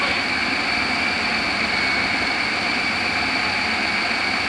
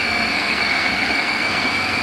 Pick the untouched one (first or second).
first